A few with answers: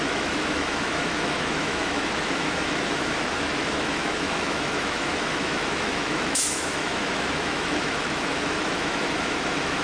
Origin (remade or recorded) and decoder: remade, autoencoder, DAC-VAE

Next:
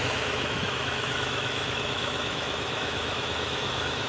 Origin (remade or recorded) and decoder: remade, autoencoder, DAC-VAE